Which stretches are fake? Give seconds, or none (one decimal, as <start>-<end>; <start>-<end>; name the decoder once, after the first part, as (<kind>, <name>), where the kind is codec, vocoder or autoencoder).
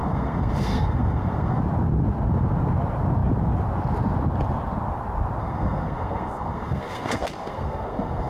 0.0-1.6 (codec, SNAC); 5.4-8.3